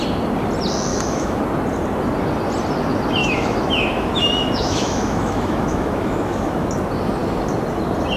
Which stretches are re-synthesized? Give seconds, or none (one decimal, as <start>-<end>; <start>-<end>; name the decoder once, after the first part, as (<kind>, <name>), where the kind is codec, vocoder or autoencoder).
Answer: 0.9-1.4 (autoencoder, DAC-VAE); 3.2-6.7